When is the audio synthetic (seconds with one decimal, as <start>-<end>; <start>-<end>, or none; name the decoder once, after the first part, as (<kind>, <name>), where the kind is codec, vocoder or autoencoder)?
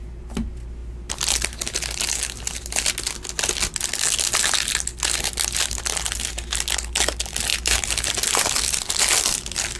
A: none